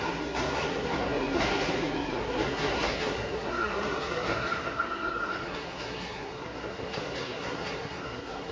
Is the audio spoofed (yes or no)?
yes